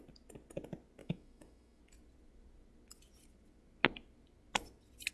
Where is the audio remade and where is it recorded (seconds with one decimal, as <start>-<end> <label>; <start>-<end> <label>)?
0.0-1.0 recorded; 1.0-1.8 remade; 1.8-5.1 recorded